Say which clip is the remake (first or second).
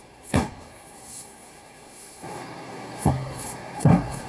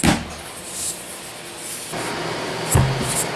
first